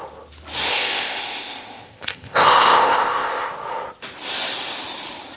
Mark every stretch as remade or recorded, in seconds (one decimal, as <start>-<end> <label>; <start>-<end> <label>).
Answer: 0.0-0.7 recorded; 0.7-3.5 remade; 3.5-5.4 recorded